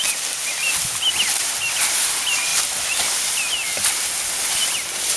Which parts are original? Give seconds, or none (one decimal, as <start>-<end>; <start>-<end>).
0.0-5.2